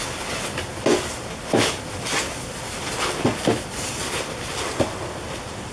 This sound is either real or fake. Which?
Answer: real